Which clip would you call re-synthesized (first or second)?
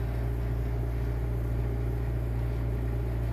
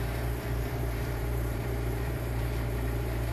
second